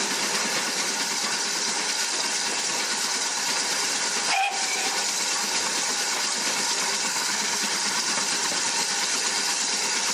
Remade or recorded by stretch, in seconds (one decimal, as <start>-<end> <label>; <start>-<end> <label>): 0.0-7.1 recorded; 7.1-7.6 remade; 7.6-10.1 recorded